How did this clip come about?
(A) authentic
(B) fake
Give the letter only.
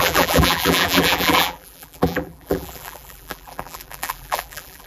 B